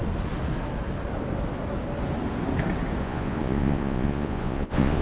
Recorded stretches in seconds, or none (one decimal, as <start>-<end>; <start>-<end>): 0.0-3.0